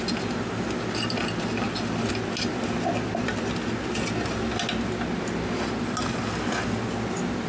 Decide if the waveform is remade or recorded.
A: recorded